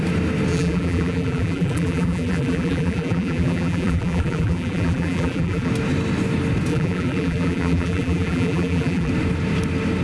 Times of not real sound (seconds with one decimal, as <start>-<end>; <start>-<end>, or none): 0.5-5.7; 6.7-9.1